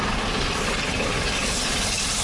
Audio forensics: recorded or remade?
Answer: recorded